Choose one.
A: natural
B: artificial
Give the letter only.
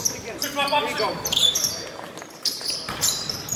B